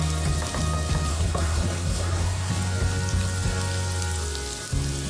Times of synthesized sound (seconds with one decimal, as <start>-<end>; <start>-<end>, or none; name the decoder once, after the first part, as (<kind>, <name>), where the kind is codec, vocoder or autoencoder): 1.1-2.5 (codec, SNAC)